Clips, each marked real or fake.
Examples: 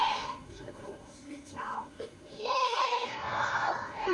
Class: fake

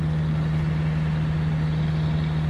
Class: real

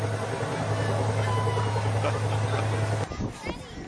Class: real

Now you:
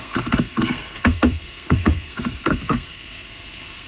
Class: fake